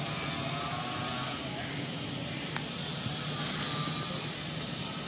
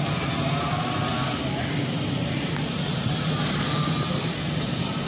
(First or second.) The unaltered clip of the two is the first